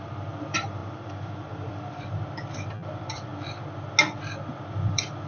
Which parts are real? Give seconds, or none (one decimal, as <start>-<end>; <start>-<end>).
3.3-4.5